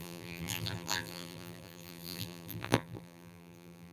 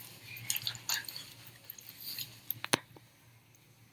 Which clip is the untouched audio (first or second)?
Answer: second